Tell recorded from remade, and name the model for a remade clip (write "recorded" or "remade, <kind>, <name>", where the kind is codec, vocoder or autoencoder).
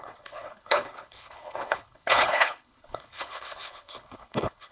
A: remade, codec, HILCodec